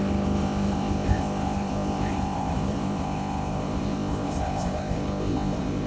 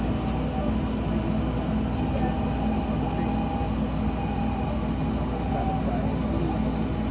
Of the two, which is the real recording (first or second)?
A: second